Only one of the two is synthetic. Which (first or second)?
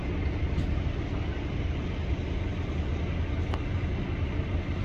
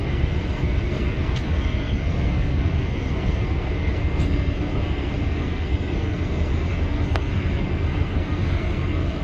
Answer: second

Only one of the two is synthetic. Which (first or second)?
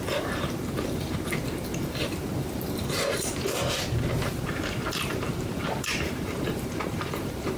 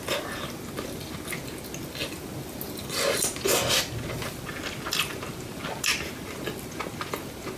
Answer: first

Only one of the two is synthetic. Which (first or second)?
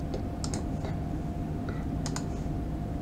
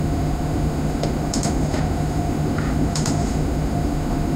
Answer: second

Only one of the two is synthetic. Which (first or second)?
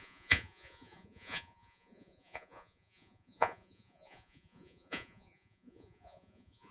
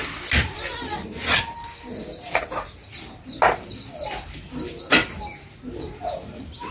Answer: first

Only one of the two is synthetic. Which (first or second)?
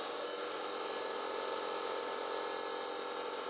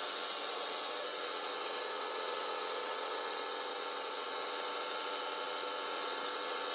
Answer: second